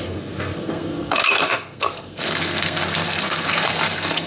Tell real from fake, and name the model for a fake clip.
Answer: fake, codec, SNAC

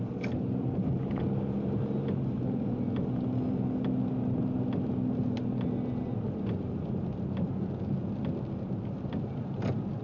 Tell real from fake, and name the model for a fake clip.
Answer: real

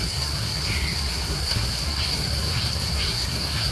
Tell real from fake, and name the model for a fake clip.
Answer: fake, codec, SNAC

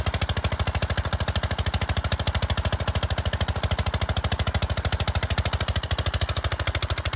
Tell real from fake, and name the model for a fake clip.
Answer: real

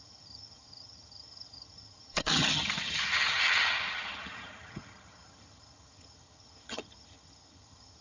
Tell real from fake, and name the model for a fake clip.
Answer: fake, vocoder, HiFi-GAN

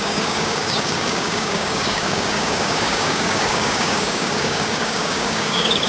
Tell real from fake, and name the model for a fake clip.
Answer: fake, codec, DAC